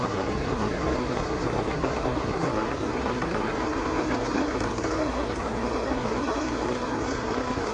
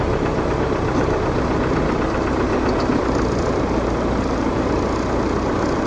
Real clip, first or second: second